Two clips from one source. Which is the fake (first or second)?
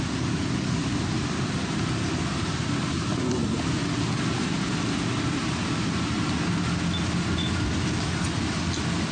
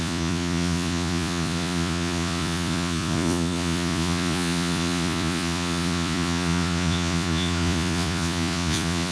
second